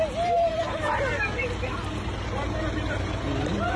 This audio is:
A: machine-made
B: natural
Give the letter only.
B